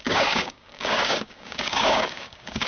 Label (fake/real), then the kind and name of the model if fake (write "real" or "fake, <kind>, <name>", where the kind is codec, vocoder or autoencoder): fake, codec, DAC